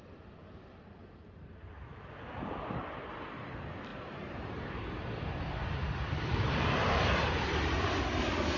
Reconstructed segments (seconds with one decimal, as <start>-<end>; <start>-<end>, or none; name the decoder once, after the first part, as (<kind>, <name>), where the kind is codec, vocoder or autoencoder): 3.9-8.0 (vocoder, BigVGAN v2)